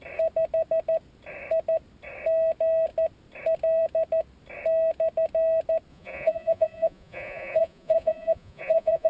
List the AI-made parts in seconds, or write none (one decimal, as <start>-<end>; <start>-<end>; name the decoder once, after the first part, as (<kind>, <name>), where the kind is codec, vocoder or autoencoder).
5.9-9.1 (vocoder, Vocos)